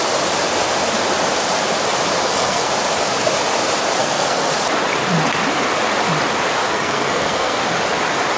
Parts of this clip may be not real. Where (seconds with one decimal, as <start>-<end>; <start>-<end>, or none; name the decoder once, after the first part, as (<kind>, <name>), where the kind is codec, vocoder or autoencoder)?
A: 2.2-2.7 (codec, SNAC); 4.0-4.5; 6.6-7.6